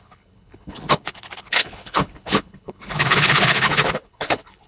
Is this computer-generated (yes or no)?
yes